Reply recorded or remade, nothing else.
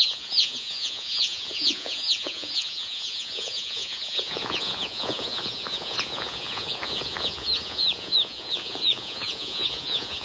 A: remade